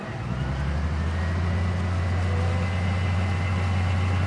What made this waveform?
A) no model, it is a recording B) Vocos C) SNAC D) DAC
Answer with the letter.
A